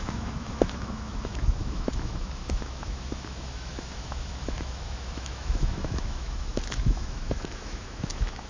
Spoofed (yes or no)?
yes